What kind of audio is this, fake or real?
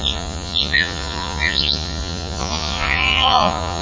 fake